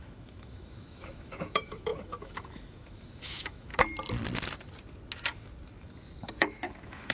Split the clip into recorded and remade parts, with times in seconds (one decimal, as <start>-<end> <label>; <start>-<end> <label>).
0.0-3.7 remade; 3.7-6.3 recorded; 6.3-7.1 remade